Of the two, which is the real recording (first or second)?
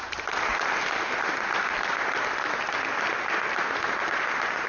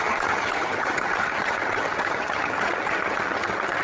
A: first